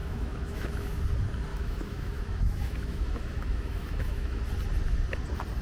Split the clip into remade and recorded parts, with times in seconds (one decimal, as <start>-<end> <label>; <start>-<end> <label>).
0.0-1.0 remade; 1.0-1.5 recorded; 1.5-4.4 remade; 4.4-5.6 recorded